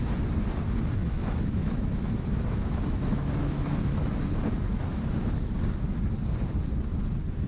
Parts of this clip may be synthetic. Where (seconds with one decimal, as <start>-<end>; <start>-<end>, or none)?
1.0-5.5